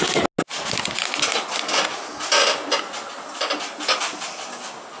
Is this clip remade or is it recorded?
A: recorded